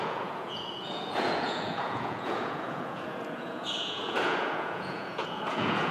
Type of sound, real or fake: fake